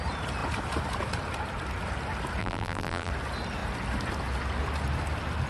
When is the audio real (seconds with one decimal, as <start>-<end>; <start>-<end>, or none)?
0.0-2.4; 3.1-5.5